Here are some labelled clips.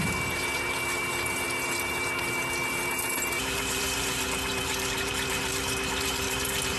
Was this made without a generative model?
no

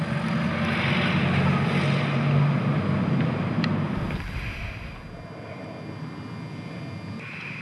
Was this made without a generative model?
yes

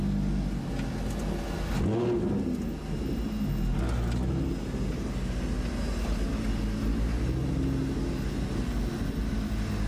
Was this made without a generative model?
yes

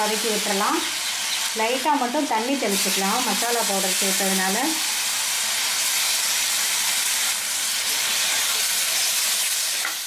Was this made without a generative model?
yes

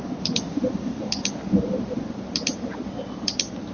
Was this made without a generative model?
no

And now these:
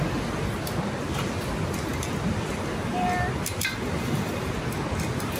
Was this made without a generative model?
yes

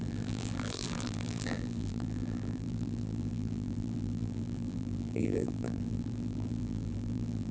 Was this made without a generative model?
no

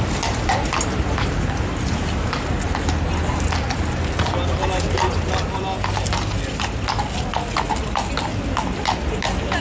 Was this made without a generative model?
yes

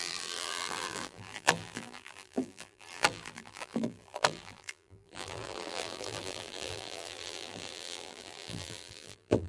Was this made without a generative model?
no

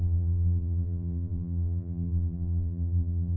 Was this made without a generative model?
no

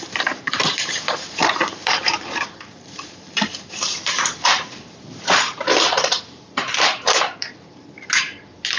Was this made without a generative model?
no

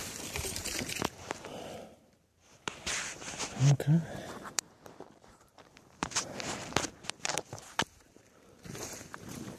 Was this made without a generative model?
no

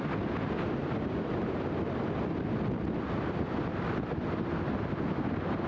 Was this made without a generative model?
yes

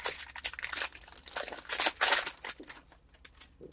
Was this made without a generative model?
yes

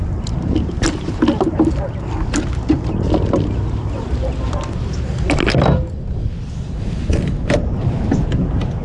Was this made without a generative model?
yes